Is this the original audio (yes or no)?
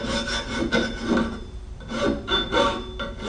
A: yes